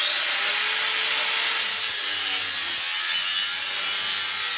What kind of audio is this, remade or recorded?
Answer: recorded